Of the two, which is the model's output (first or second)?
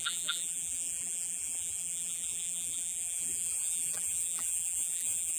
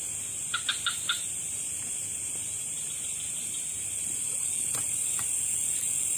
first